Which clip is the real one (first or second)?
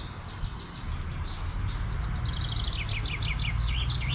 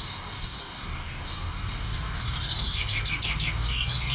first